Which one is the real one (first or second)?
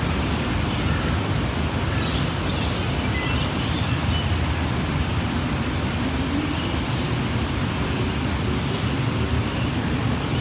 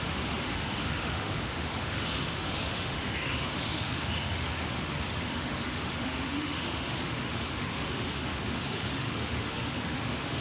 first